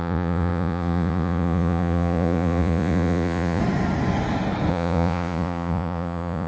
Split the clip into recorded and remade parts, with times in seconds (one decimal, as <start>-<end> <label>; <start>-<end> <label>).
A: 0.0-3.6 remade; 3.6-4.7 recorded; 4.7-6.5 remade